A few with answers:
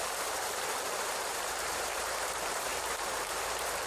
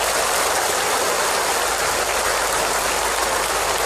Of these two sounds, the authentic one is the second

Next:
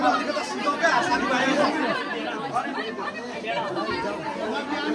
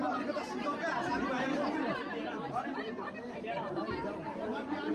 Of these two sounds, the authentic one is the first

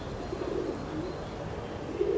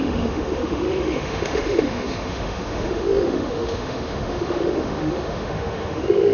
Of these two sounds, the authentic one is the first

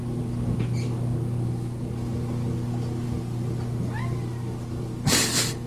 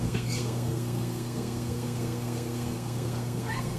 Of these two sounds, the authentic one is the first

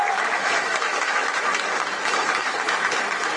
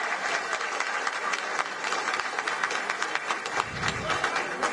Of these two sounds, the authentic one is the second